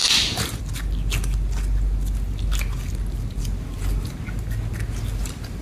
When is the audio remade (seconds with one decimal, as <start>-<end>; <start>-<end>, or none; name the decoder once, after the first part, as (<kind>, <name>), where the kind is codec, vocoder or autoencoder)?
none